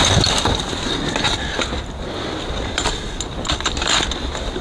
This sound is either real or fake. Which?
real